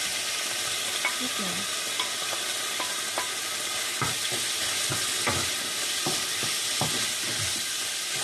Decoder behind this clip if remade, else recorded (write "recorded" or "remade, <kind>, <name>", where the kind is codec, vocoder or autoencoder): recorded